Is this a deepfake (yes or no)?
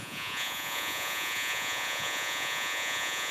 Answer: yes